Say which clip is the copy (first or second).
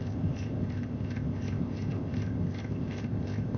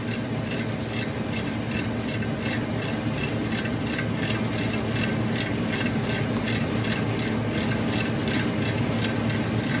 first